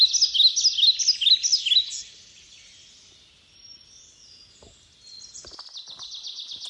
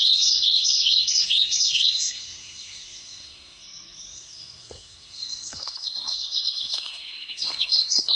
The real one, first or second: first